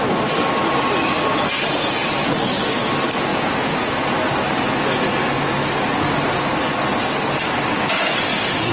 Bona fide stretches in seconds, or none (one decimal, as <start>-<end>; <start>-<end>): 0.0-3.3; 3.9-8.7